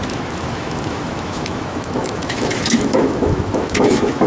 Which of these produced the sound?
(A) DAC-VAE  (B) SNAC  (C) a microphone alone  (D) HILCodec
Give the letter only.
A